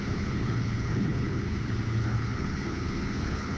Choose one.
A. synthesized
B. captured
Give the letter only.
A